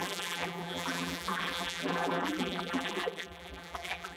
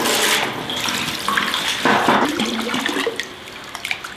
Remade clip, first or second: first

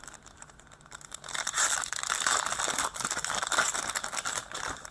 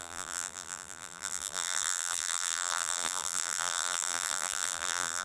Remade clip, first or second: second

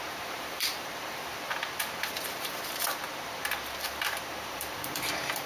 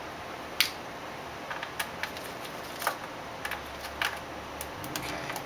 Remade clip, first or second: first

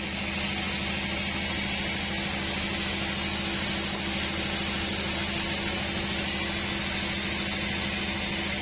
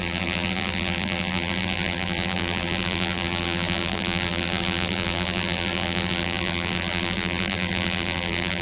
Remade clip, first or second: second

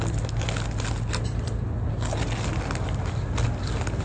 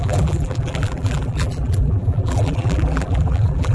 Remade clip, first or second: second